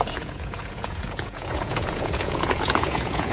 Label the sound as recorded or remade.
remade